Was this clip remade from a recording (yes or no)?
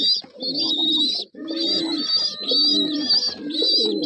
no